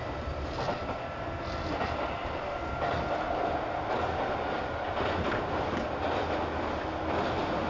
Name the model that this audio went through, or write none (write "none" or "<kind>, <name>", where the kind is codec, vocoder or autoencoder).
none